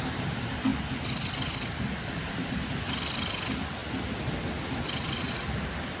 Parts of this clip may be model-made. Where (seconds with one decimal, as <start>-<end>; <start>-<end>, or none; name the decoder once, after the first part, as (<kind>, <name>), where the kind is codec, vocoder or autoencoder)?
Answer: none